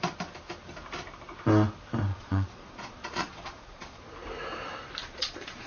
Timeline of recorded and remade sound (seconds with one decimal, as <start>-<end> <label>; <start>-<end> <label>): 0.0-2.1 recorded; 2.1-4.0 remade; 4.0-5.0 recorded; 5.0-5.7 remade